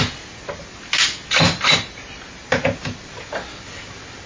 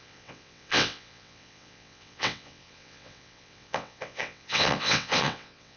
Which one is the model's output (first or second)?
second